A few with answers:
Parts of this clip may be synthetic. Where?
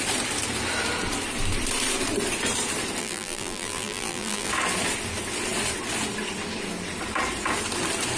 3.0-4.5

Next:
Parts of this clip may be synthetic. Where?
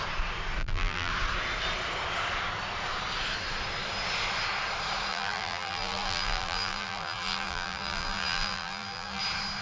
0.6-1.1; 5.1-9.2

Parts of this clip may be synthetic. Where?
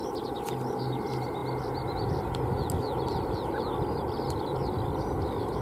0.8-1.4; 4.4-5.6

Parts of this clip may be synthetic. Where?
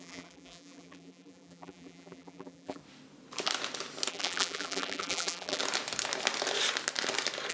0.0-2.8; 4.1-5.6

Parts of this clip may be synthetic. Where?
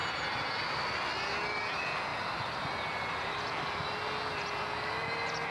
none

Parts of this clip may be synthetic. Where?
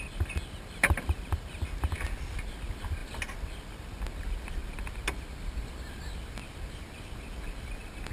none